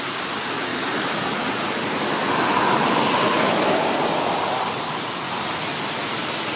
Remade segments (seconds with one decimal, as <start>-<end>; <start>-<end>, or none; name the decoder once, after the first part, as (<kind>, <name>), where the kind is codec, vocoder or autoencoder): none